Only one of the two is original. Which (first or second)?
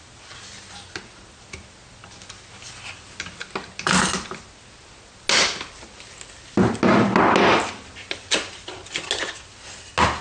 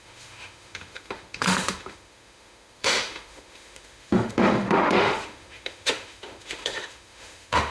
first